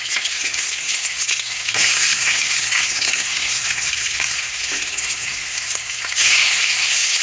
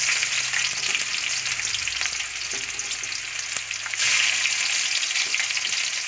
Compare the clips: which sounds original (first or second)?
second